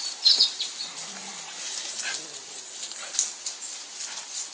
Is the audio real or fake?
real